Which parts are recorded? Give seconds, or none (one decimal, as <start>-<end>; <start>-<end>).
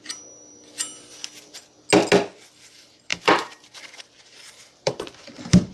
0.9-2.7